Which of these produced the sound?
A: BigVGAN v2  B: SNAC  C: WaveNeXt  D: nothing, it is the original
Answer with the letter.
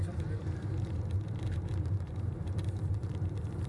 A